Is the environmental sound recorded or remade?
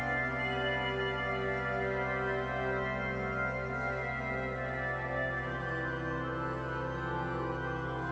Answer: recorded